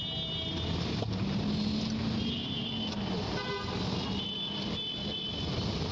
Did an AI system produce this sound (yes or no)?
no